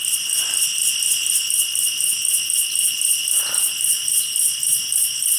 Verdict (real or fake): real